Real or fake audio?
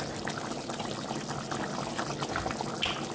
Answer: real